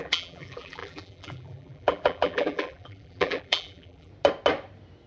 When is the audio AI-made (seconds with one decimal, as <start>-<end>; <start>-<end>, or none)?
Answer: 0.0-4.1